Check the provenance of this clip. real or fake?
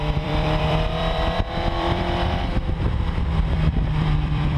fake